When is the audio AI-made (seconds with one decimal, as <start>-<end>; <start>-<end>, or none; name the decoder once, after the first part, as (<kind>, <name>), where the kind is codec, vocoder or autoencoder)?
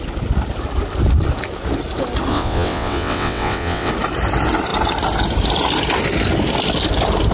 2.3-3.9 (vocoder, WaveNeXt)